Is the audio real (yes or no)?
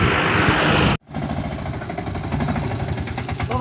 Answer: yes